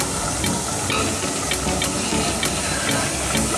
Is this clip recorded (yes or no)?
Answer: yes